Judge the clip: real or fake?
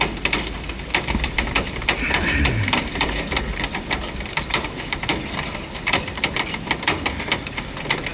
real